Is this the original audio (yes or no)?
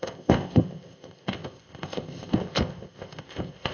no